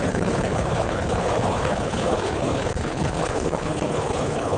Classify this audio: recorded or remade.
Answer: remade